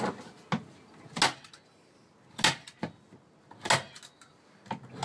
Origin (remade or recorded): recorded